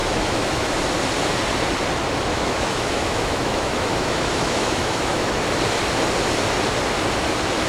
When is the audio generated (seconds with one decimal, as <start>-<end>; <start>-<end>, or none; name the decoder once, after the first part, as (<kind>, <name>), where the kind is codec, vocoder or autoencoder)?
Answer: 0.0-0.7 (autoencoder, DAC-VAE); 2.3-5.4